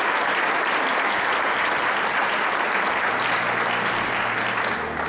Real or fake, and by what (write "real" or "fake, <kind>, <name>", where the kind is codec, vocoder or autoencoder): real